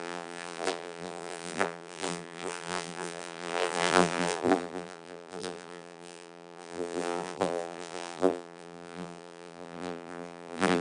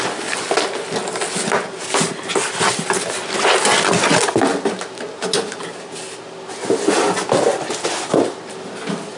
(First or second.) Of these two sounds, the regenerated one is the first